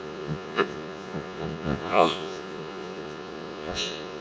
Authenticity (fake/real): fake